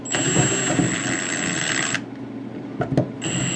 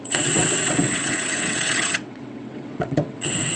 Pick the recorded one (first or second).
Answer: first